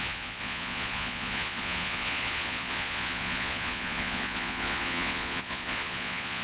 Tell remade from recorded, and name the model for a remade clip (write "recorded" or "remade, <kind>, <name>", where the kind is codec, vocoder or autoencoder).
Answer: remade, vocoder, Vocos